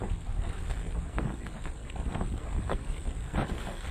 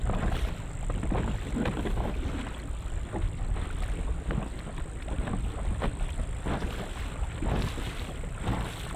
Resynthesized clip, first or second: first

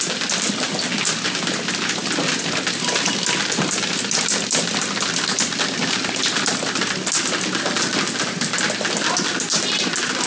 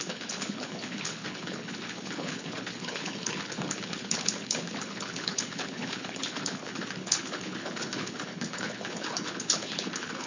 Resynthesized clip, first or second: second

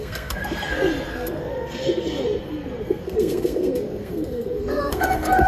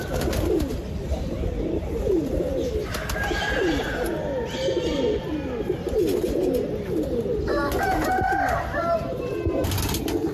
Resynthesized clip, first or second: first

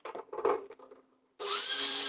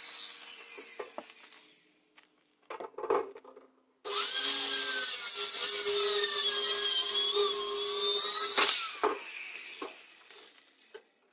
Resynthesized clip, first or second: first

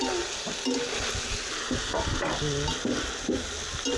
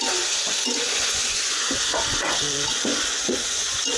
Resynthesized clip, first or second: second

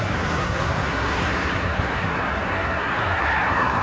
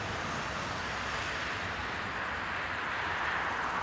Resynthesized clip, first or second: first